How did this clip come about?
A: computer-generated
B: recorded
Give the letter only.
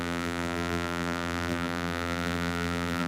A